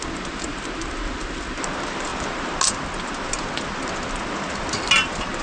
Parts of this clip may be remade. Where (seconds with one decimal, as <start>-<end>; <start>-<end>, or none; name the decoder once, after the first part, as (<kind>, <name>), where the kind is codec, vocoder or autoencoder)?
none

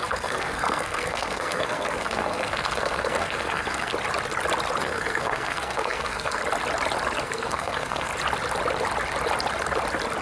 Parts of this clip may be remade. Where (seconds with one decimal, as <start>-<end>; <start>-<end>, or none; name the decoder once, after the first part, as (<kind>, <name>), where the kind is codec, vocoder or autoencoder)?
0.0-3.9 (codec, SNAC); 4.8-6.4; 7.2-8.1

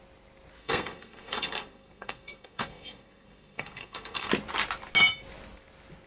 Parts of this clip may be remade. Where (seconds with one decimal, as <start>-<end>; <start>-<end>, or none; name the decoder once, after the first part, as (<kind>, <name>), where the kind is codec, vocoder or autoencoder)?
0.6-4.3 (codec, SNAC)

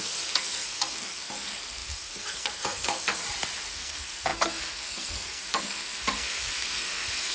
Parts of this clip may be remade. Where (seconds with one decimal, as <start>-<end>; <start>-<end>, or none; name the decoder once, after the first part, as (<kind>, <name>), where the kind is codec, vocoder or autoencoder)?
0.0-3.2 (codec, SNAC); 3.7-7.3

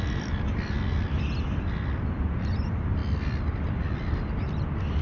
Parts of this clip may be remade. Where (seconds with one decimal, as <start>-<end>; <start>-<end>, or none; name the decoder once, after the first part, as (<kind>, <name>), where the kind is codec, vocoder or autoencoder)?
none